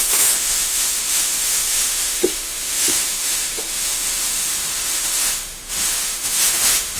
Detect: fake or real fake